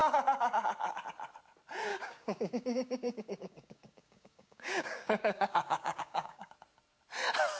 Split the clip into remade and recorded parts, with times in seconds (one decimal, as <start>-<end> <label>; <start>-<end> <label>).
0.0-1.9 recorded; 1.9-6.5 remade; 6.5-7.6 recorded